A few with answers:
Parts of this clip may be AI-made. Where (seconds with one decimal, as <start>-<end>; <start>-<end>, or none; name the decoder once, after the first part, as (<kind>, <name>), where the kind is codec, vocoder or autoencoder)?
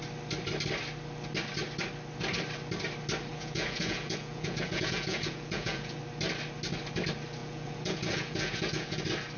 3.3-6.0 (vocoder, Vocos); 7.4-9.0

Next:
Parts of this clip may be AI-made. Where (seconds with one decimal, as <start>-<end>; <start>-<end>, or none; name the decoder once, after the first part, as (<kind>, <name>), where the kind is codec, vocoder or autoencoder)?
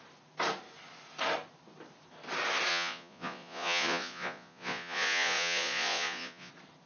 2.7-6.5 (vocoder, Vocos)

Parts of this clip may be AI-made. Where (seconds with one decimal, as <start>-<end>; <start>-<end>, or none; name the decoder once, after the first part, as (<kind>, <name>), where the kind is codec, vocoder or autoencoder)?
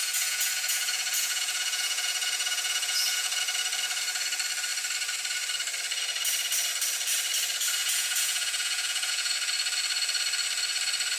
0.0-3.4 (vocoder, Vocos); 7.8-9.3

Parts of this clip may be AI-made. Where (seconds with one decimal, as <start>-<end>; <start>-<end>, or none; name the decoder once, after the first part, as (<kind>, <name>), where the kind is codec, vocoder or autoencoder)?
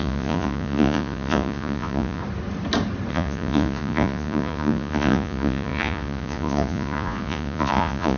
0.0-2.2 (vocoder, Vocos); 3.1-8.2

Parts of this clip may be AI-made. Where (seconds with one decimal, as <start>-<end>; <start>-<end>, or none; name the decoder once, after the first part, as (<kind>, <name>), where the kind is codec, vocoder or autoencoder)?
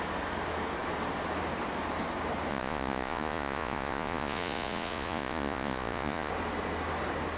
2.5-6.3 (vocoder, Vocos)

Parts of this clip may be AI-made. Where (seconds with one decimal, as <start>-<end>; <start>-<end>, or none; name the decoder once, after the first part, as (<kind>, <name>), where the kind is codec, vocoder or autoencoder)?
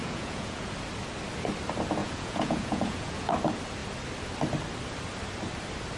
0.0-0.7 (vocoder, Vocos); 2.0-3.3